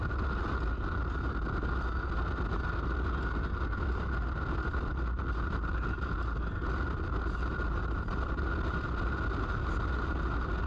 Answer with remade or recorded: recorded